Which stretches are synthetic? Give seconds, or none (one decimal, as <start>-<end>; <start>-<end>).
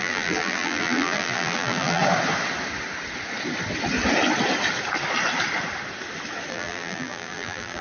0.0-2.0; 6.5-7.8